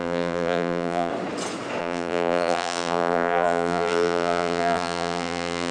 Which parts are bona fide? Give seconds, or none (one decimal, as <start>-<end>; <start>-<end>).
1.1-1.8